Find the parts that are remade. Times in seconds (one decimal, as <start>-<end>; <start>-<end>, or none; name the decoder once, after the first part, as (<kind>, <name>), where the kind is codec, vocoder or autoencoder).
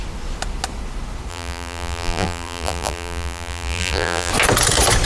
1.3-4.3 (vocoder, BigVGAN v2)